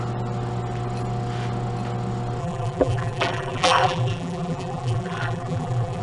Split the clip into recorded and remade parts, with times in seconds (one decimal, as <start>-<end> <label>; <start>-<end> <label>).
0.0-2.4 recorded; 2.4-6.0 remade